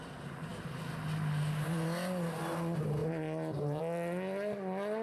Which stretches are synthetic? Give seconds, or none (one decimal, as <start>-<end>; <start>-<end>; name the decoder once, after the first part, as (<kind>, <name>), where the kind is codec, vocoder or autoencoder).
3.0-3.8 (vocoder, BigVGAN v2)